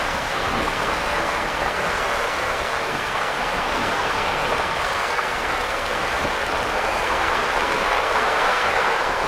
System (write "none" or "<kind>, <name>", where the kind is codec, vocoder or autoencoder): codec, SNAC